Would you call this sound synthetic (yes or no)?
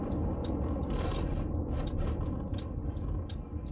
no